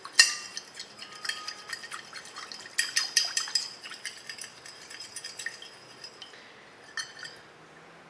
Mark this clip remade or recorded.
recorded